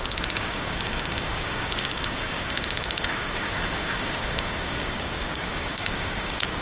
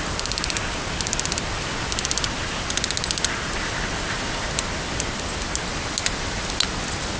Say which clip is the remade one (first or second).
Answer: first